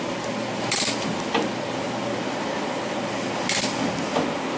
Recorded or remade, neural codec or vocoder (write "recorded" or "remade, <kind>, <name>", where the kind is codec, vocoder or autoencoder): recorded